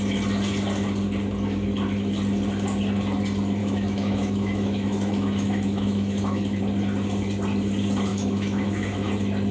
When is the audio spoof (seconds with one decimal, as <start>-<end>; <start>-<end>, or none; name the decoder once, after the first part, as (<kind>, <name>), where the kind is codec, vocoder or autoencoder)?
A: 3.6-6.6 (autoencoder, DAC-VAE); 8.1-9.1